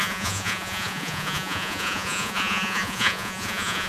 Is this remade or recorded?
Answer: remade